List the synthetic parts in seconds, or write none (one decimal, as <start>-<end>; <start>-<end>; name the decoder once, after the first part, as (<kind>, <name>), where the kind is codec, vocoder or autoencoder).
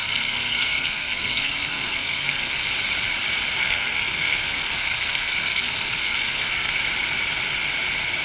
0.0-2.7 (codec, SNAC); 3.6-6.7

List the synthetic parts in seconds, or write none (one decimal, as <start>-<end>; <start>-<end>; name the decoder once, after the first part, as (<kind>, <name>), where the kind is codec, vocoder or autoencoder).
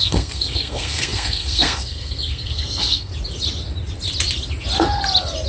0.0-3.1 (codec, SNAC)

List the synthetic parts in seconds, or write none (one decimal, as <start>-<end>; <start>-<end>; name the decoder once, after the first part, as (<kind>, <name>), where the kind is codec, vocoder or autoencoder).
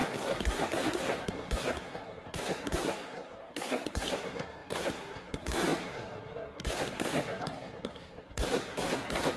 0.0-9.4 (codec, SNAC)